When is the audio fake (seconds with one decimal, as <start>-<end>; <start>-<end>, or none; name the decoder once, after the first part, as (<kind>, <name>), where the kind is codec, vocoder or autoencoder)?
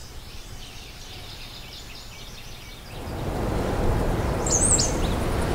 0.0-1.1 (vocoder, BigVGAN v2)